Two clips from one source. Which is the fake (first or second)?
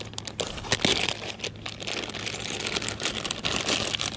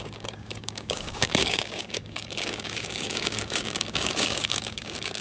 second